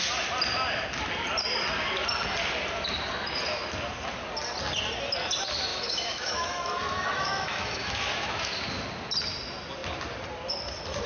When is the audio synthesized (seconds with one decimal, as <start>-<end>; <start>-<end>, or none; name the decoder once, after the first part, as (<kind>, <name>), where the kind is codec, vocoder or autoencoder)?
5.7-8.4 (autoencoder, DAC-VAE)

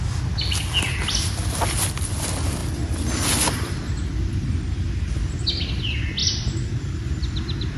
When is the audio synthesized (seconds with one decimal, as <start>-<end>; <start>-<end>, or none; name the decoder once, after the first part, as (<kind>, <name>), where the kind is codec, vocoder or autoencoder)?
none

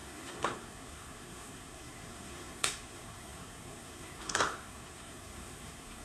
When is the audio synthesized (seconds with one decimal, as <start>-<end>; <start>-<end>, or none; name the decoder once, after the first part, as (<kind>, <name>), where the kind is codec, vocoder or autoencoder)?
0.0-6.0 (codec, SNAC)